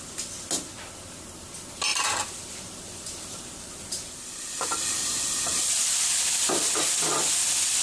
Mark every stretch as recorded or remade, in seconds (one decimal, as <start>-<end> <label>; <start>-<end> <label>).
0.0-1.9 recorded; 1.9-5.7 remade; 5.7-7.8 recorded